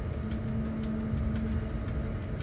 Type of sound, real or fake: real